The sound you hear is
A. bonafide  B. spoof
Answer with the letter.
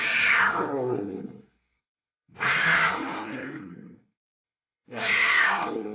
B